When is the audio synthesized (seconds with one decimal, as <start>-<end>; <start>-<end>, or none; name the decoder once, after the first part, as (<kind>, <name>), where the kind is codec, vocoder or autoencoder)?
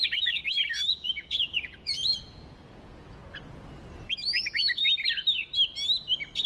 0.0-0.4 (vocoder, Vocos); 0.9-3.2